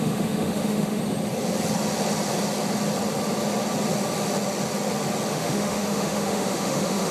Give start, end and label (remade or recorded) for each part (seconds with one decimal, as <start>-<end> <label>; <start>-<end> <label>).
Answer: 0.0-1.0 remade; 1.0-5.3 recorded; 5.3-7.1 remade